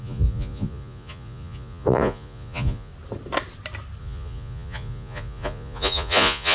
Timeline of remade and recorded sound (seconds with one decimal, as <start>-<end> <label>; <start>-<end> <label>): 0.0-2.9 remade; 2.9-4.0 recorded; 4.0-6.5 remade